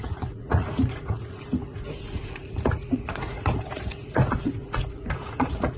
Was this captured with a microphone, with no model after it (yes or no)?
no